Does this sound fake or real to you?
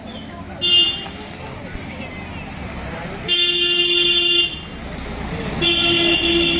real